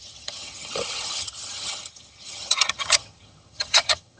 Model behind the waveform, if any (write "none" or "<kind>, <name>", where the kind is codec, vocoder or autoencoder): vocoder, HiFi-GAN